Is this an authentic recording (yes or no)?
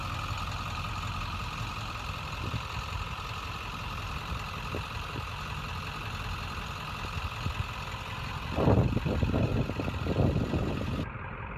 yes